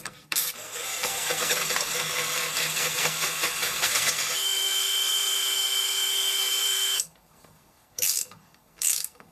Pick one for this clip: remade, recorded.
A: remade